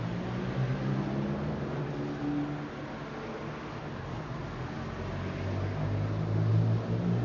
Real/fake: real